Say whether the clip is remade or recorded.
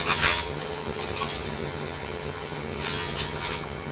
remade